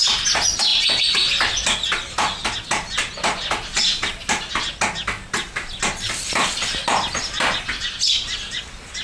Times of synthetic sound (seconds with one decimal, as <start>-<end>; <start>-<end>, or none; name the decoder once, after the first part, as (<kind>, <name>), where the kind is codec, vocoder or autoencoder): none